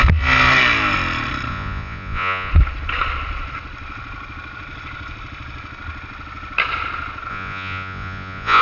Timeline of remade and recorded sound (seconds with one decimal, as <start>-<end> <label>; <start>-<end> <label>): 0.0-1.5 recorded; 1.5-2.5 remade; 2.5-7.3 recorded; 7.3-8.6 remade